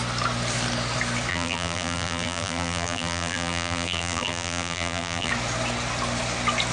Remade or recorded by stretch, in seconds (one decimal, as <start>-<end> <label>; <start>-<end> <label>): 0.0-1.3 recorded; 1.3-5.3 remade; 5.3-6.7 recorded